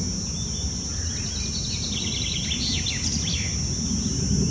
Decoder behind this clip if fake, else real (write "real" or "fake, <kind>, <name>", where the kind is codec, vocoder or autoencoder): real